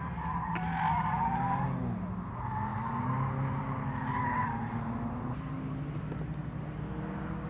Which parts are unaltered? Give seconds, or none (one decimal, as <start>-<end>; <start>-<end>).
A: 0.0-7.5